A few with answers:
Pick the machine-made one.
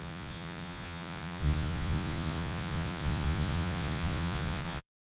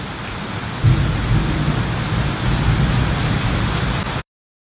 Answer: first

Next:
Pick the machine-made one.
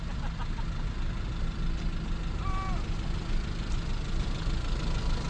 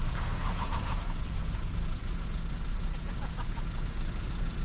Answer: second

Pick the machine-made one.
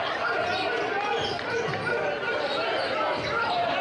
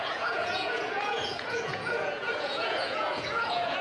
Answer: second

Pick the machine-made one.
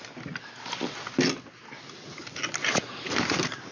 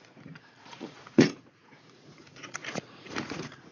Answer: second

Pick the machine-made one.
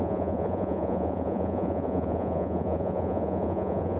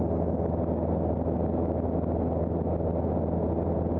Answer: first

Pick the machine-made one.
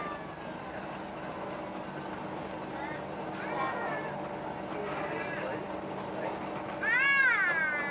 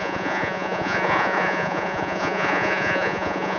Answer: second